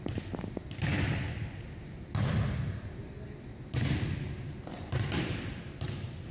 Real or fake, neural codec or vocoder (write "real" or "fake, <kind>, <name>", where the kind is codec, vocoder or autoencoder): real